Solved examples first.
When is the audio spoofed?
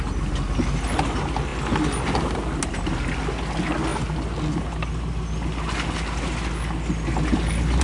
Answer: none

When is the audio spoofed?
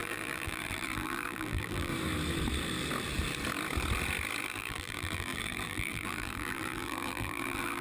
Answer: 0.0-1.9; 4.4-7.8